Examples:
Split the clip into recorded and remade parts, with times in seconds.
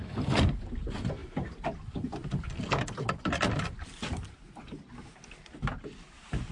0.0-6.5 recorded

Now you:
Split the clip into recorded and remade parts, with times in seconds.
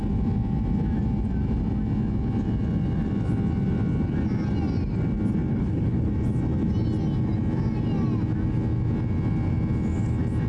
0.0-5.5 recorded; 5.5-6.1 remade; 6.1-10.5 recorded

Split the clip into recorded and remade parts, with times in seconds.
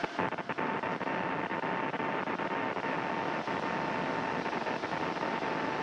0.0-5.8 recorded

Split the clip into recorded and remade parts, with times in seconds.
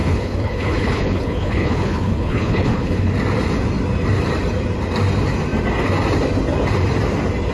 0.0-3.1 remade; 3.1-7.5 recorded